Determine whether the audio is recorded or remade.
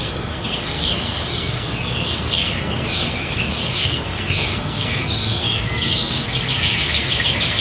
remade